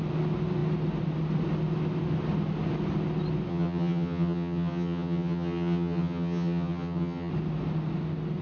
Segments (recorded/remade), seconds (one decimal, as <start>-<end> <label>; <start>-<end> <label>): 0.0-3.5 recorded; 3.5-7.3 remade; 7.3-8.4 recorded